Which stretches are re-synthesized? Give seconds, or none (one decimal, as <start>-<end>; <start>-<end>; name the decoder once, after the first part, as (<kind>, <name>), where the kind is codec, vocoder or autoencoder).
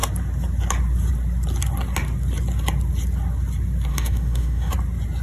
3.9-4.7 (autoencoder, DAC-VAE)